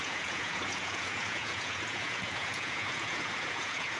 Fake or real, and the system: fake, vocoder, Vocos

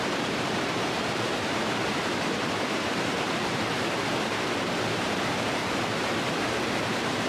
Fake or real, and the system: fake, vocoder, BigVGAN v2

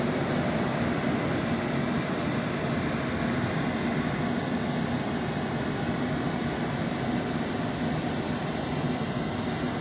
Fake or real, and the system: real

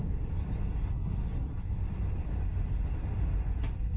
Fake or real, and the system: real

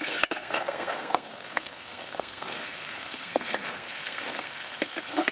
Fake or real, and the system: fake, codec, SNAC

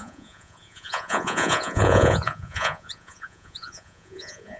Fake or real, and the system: fake, vocoder, Vocos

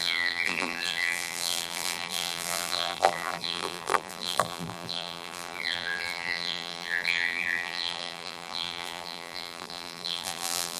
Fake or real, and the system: fake, vocoder, BigVGAN v2